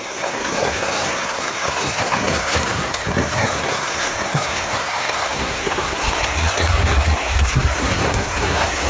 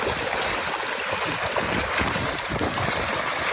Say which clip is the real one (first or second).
second